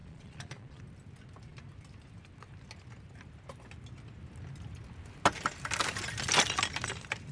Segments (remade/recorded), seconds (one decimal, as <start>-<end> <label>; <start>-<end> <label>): 0.0-0.8 remade; 0.8-7.3 recorded